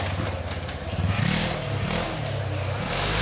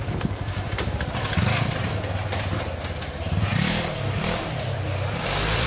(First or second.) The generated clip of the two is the second